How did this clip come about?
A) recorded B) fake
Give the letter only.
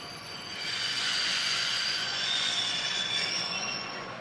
B